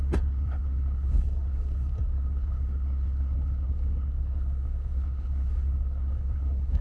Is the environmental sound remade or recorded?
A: remade